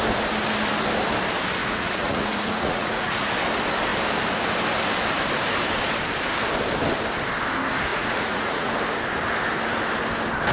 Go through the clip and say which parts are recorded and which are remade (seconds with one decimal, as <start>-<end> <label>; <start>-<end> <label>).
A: 0.0-1.6 recorded; 1.6-3.3 remade; 3.3-7.9 recorded; 7.9-8.7 remade; 8.7-10.5 recorded